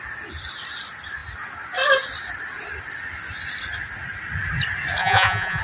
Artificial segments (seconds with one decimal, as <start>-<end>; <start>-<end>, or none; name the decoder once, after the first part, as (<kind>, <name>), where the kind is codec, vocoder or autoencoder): 5.0-5.6 (vocoder, Vocos)